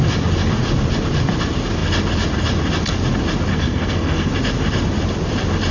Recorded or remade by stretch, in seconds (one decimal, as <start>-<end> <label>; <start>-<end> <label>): 0.0-3.5 recorded; 3.5-4.3 remade; 4.3-5.7 recorded